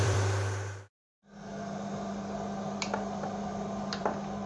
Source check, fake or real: fake